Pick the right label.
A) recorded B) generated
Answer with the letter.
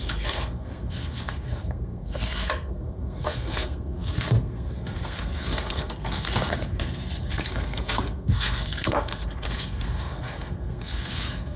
B